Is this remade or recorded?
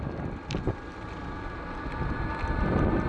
recorded